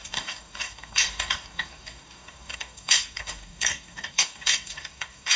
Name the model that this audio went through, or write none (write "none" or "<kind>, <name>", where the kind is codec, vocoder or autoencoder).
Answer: codec, DAC